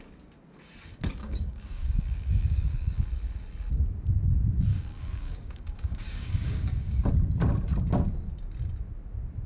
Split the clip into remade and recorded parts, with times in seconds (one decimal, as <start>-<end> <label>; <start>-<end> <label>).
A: 0.0-1.2 recorded; 1.2-3.1 remade; 3.1-4.7 recorded; 4.7-7.1 remade; 7.1-9.5 recorded